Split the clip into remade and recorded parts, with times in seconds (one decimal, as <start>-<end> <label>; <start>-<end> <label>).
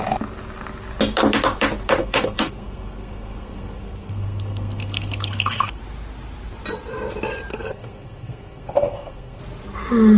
0.0-2.0 recorded; 2.0-5.8 remade; 5.8-7.5 recorded; 7.5-9.4 remade; 9.4-10.2 recorded